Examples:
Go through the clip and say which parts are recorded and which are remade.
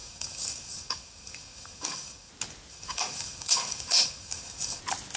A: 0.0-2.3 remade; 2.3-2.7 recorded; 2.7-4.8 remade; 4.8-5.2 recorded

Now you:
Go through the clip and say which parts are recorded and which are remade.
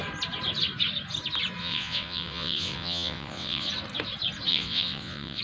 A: 0.0-1.6 recorded; 1.6-3.7 remade; 3.7-4.5 recorded; 4.5-5.4 remade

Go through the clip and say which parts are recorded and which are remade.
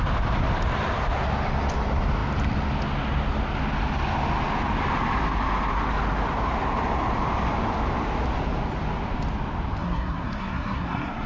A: 0.0-9.8 recorded; 9.8-11.3 remade